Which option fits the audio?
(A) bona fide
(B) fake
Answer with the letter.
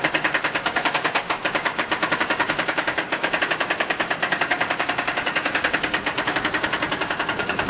B